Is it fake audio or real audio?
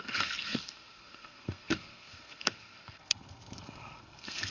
fake